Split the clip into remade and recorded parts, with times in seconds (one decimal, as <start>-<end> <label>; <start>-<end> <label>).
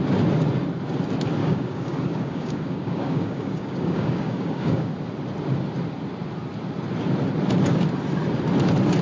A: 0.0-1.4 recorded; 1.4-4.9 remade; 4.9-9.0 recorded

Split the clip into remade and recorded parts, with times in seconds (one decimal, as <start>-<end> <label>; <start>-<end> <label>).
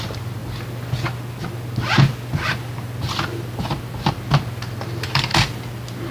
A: 0.0-6.1 recorded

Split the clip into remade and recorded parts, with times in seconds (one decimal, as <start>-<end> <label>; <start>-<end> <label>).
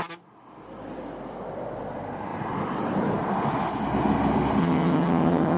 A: 0.0-4.6 recorded; 4.6-5.6 remade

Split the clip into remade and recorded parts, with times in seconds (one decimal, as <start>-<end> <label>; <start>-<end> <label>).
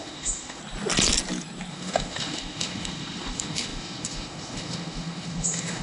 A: 0.0-0.6 remade; 0.6-1.7 recorded; 1.7-5.8 remade